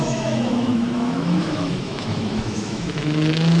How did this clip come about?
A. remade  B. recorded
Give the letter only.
A